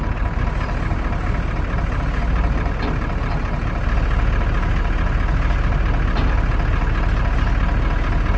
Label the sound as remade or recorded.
recorded